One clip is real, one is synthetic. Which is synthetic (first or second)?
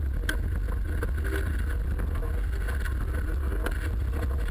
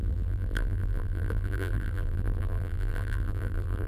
second